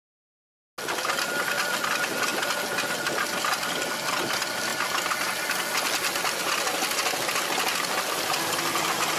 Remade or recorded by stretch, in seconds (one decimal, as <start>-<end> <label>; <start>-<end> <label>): 0.0-9.2 recorded